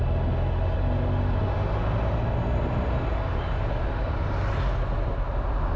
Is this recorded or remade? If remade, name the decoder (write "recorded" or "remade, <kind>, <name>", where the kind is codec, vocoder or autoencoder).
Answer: recorded